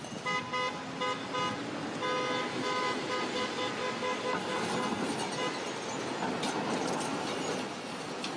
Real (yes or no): yes